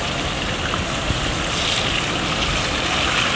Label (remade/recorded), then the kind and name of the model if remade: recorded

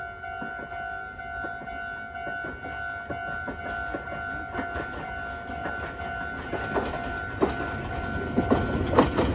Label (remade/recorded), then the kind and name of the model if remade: recorded